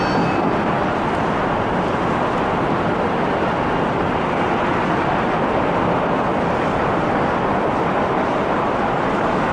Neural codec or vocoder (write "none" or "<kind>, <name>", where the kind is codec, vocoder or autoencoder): none